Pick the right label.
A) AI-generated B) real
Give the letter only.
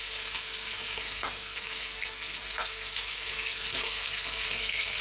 A